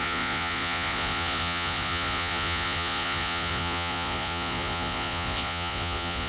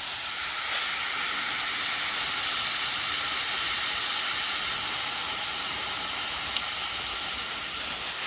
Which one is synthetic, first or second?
first